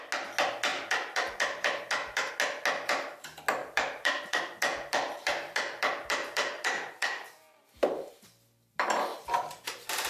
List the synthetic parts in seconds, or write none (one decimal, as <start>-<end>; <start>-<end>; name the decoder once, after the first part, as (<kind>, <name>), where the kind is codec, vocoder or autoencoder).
0.7-2.3 (vocoder, BigVGAN v2); 3.6-8.1; 9.1-10.1